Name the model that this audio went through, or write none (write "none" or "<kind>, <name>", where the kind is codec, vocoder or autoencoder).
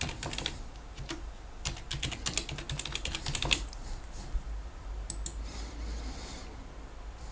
none